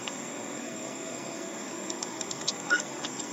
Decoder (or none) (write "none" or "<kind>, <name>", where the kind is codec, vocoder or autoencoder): codec, SNAC